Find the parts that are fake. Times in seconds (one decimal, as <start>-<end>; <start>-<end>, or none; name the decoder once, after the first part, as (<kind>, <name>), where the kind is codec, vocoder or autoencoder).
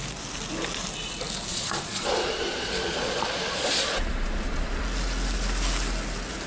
1.5-4.8 (vocoder, Vocos)